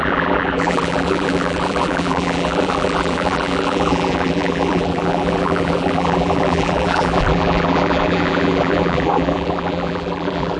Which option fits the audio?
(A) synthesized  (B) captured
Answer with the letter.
A